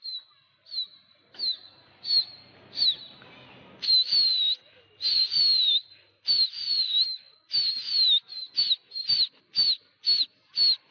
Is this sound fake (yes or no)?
no